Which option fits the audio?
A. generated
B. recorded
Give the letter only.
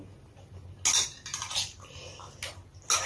B